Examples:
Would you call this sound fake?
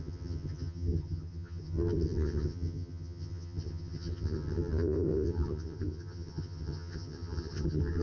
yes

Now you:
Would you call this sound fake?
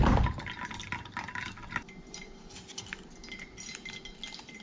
no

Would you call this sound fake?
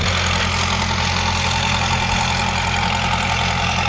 no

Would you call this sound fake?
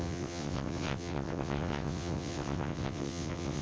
yes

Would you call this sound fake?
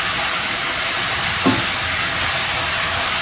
no